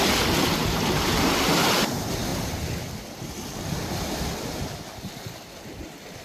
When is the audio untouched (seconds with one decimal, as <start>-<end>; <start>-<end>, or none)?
0.0-0.6; 1.4-6.2